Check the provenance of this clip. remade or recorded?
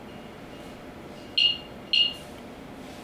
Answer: recorded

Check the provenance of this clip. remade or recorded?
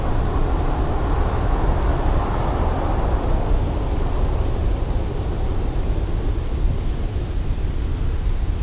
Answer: recorded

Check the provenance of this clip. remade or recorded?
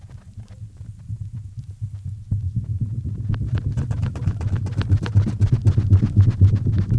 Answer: recorded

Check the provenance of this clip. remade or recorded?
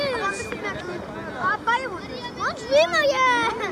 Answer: recorded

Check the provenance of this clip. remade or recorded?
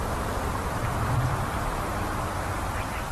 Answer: remade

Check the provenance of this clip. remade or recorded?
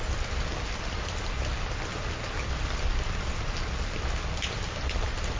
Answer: recorded